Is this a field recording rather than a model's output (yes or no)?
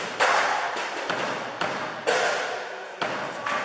yes